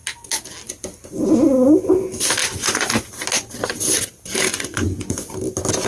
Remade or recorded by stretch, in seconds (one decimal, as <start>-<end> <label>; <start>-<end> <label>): 0.0-2.4 recorded; 2.4-3.1 remade; 3.1-4.5 recorded; 4.5-5.3 remade; 5.3-5.9 recorded